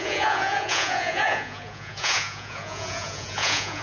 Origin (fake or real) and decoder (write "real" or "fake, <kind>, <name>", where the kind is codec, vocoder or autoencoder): fake, vocoder, Vocos